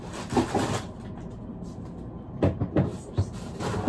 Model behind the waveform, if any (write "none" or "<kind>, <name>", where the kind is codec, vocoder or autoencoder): none